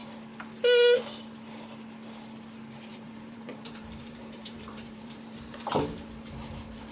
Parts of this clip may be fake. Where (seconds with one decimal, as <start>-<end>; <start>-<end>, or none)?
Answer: 2.9-5.8